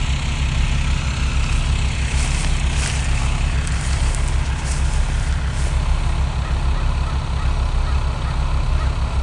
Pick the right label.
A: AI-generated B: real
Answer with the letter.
B